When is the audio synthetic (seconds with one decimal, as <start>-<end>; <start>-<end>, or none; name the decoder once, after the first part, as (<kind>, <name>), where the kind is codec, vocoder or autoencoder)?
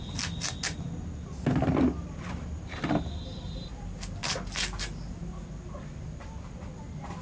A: none